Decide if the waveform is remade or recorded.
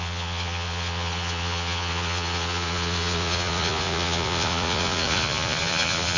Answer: remade